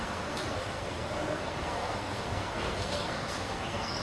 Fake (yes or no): yes